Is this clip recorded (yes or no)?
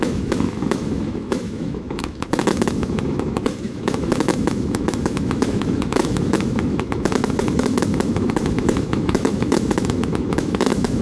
no